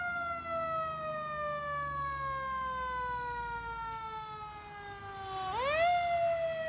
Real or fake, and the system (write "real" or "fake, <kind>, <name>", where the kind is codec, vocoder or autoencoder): real